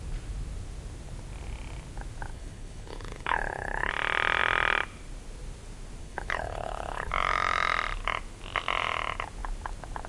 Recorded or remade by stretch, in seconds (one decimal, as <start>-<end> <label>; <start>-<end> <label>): 0.0-2.3 recorded; 2.3-3.9 remade; 3.9-6.0 recorded; 6.0-7.1 remade; 7.1-10.1 recorded